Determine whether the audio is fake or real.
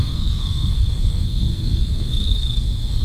fake